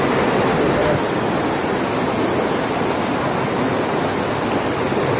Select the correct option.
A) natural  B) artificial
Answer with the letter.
A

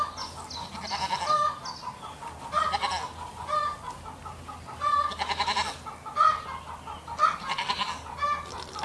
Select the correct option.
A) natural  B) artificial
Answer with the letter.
A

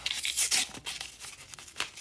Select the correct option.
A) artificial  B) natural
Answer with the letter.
B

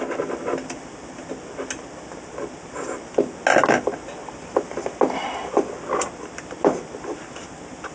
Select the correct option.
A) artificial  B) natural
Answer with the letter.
B